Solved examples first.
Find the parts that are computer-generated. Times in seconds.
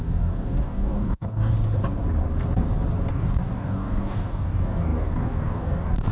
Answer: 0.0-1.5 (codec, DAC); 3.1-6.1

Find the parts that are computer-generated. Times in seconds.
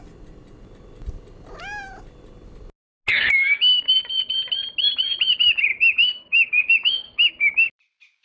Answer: 3.1-3.8 (codec, DAC); 5.7-7.3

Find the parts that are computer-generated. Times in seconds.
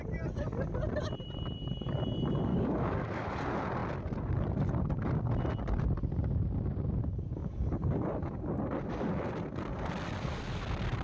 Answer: 2.5-3.4 (codec, DAC)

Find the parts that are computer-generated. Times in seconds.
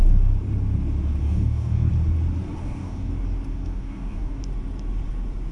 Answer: 1.2-1.9 (codec, DAC); 2.6-3.1; 3.5-4.4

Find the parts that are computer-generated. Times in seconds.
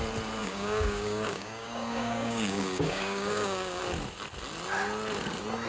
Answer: 0.4-3.8 (codec, DAC)